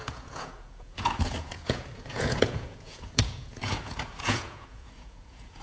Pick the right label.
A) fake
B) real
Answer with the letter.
A